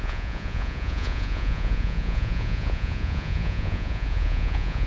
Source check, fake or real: fake